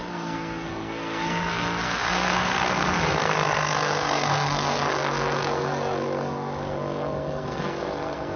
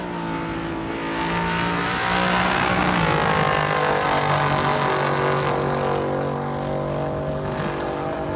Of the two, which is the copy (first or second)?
first